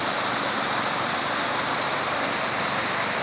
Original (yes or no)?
yes